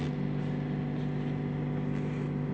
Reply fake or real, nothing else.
real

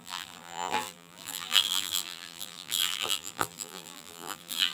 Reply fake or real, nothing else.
fake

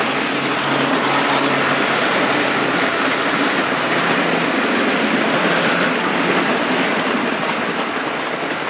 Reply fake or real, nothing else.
real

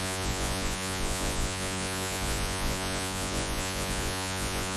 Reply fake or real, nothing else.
fake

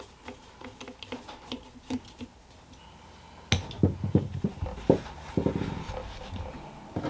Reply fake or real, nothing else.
real